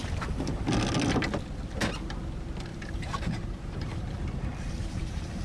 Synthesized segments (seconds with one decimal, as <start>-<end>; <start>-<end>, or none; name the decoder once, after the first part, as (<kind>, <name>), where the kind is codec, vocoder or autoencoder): 2.7-4.0 (vocoder, BigVGAN v2); 4.5-5.4